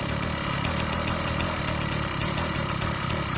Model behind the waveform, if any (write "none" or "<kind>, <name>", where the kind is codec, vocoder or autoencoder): none